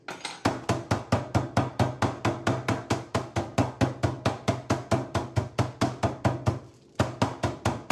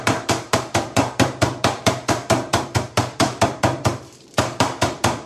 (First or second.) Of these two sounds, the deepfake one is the second